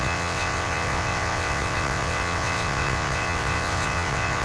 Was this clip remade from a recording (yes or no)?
yes